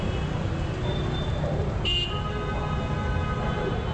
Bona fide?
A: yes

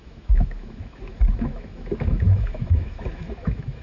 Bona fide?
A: no